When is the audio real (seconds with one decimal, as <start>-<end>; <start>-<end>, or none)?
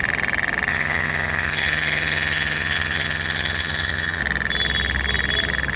0.0-0.7; 4.2-5.8